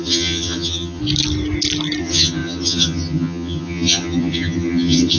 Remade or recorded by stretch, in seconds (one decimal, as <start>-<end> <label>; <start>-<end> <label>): 0.0-1.0 remade; 1.0-2.0 recorded; 2.0-5.2 remade